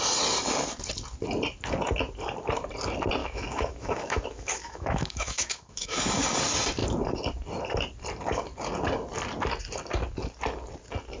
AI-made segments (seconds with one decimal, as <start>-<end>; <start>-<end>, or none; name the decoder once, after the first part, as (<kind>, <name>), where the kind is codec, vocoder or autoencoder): 3.2-6.1 (autoencoder, DAC-VAE)